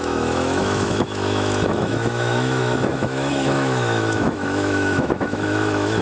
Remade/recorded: remade